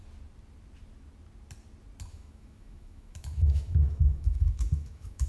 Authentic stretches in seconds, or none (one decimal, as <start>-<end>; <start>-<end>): 0.0-2.1

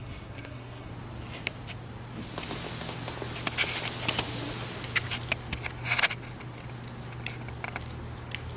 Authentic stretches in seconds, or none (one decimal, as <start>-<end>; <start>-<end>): 0.9-8.6

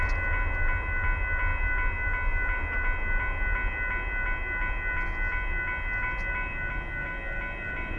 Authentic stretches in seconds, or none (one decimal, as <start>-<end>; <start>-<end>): 0.0-8.0